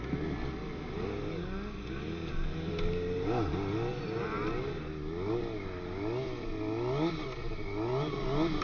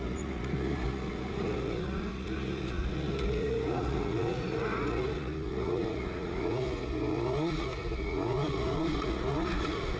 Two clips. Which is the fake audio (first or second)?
second